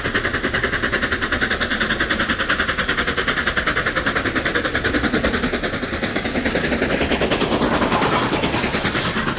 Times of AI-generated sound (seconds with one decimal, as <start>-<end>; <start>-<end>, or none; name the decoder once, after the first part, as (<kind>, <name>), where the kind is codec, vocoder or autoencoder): 6.1-6.7 (codec, DAC)